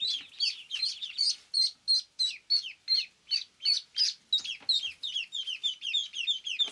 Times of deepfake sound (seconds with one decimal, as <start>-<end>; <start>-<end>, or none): none

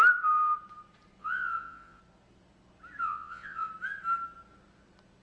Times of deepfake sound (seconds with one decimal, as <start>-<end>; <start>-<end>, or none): 1.2-2.0; 3.0-3.7

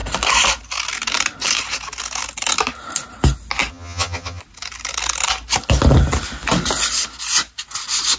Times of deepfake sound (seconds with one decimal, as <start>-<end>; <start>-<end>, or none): 3.7-4.4

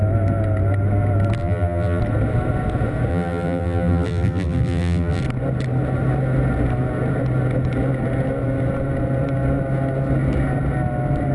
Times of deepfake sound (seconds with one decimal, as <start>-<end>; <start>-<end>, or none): 1.4-2.0; 3.1-5.2

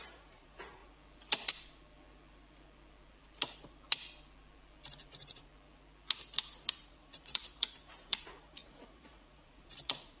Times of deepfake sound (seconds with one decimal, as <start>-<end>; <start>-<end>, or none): 0.0-0.8; 5.1-5.5; 6.7-10.2

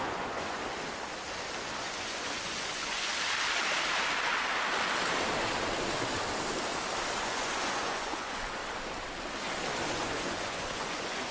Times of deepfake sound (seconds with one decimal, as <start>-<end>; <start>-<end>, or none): 0.0-0.6; 1.8-3.1; 7.2-8.6; 9.9-11.3